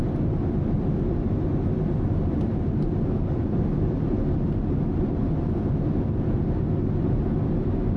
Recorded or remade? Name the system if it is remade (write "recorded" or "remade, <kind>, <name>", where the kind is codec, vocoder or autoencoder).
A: recorded